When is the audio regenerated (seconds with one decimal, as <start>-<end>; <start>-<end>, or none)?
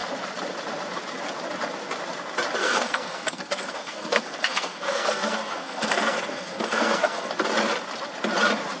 2.6-7.3